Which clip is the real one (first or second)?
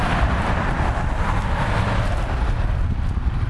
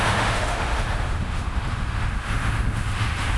first